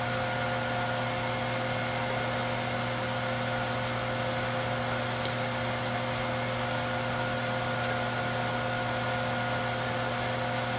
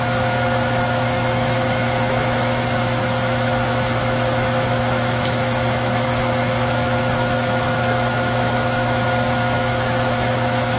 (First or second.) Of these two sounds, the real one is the first